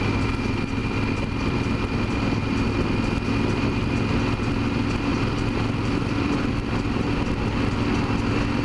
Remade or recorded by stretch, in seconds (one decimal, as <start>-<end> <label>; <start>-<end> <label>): 0.0-5.1 recorded; 5.1-7.4 remade; 7.4-8.6 recorded